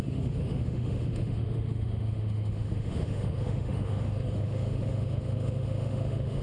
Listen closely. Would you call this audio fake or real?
fake